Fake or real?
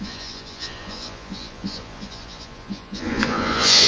fake